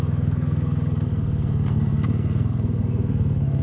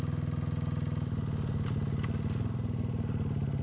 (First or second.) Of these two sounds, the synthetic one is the first